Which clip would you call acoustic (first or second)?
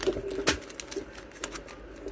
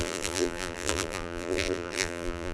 first